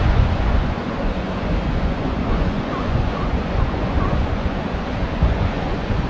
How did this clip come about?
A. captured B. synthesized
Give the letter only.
B